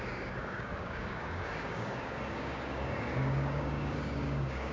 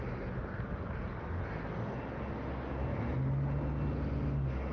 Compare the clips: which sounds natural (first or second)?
second